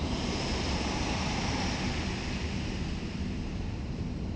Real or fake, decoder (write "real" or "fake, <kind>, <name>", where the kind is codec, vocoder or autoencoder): real